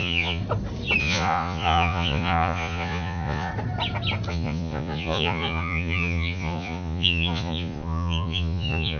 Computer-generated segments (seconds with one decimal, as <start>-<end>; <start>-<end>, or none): 0.0-0.4; 1.0-3.5; 4.3-9.0